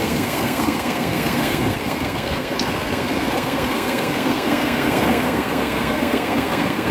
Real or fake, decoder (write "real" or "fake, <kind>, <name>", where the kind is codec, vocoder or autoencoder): fake, codec, SNAC